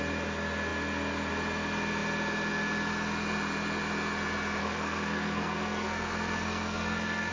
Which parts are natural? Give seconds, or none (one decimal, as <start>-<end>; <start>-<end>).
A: 0.0-4.6